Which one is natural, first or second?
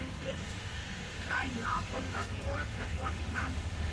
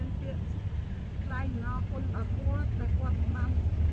second